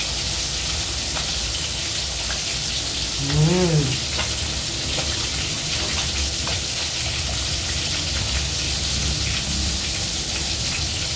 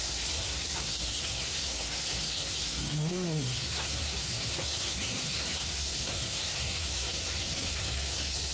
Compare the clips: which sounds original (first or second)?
first